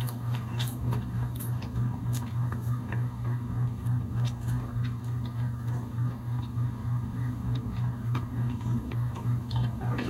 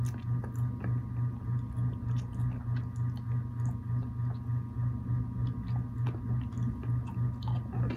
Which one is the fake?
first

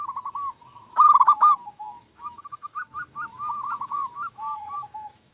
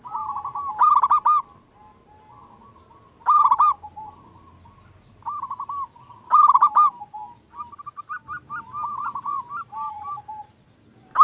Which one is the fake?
first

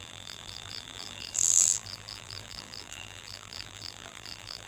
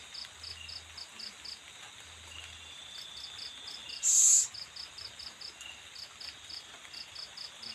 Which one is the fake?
first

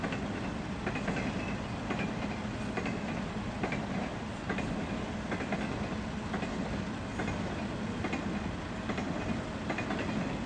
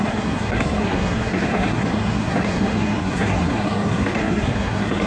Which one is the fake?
second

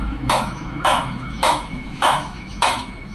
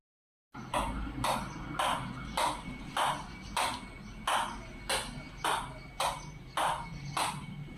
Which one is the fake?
first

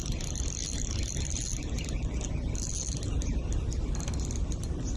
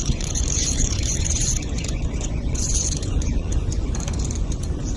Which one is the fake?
second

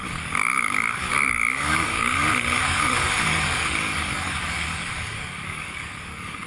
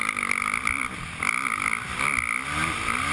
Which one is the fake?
first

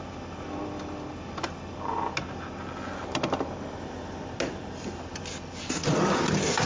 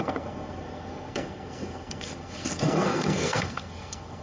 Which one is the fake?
second